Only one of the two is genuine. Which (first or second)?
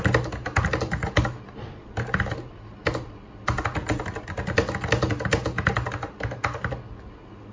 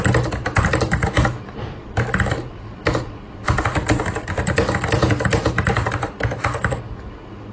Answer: first